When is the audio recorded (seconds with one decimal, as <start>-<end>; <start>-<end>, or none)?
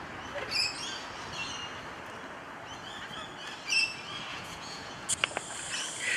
0.0-4.3; 5.1-6.2